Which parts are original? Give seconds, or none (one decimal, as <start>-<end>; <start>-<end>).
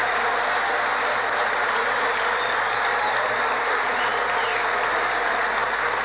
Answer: 0.0-6.0